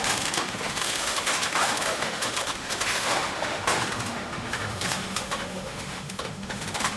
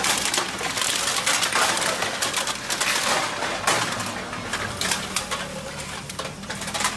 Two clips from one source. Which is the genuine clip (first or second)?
second